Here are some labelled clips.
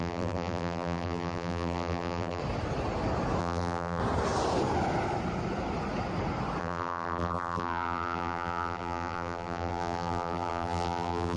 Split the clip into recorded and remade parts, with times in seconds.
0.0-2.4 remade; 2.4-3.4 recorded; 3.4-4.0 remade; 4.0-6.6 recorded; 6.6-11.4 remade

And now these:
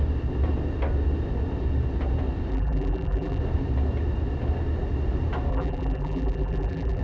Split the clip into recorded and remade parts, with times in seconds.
0.0-2.5 recorded; 2.5-3.4 remade; 3.4-5.5 recorded; 5.5-7.0 remade

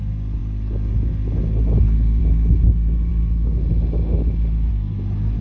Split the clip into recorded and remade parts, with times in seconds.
0.0-4.7 recorded; 4.7-5.4 remade

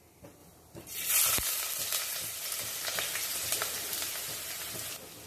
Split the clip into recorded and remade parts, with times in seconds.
0.0-5.3 recorded

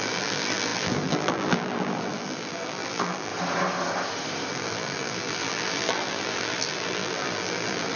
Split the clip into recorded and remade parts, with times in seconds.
0.0-3.3 remade; 3.3-4.5 recorded; 4.5-8.0 remade

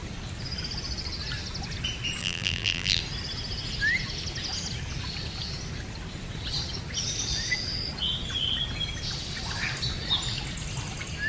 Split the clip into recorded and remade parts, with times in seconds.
0.0-2.2 recorded; 2.2-3.0 remade; 3.0-11.3 recorded